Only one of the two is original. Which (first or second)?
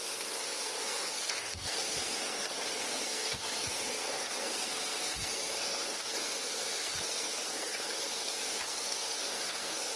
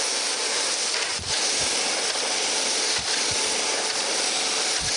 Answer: second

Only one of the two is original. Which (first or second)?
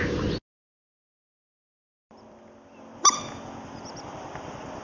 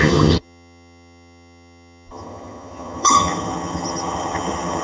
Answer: first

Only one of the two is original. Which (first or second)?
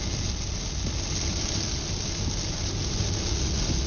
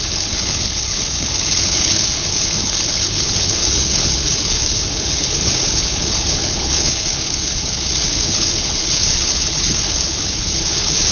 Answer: first